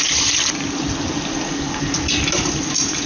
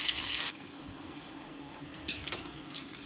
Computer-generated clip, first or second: second